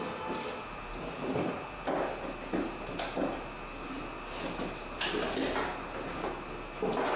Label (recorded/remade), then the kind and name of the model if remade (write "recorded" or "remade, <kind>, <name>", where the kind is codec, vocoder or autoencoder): recorded